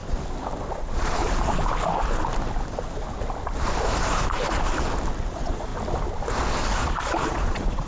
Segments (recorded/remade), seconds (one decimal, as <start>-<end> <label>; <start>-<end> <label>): 0.0-0.7 recorded; 0.7-1.2 remade; 1.2-5.3 recorded; 5.3-5.7 remade; 5.7-6.8 recorded; 6.8-7.9 remade